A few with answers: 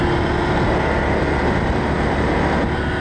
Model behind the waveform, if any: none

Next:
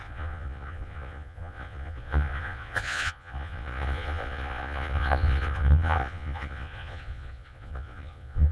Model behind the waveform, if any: vocoder, Vocos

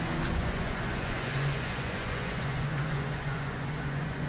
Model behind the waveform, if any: vocoder, Vocos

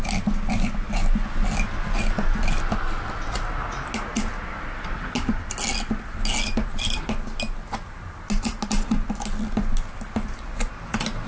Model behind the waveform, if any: none